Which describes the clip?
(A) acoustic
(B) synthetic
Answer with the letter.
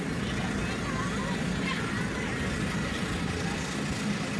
A